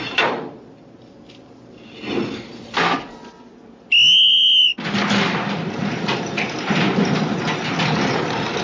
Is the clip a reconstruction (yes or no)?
no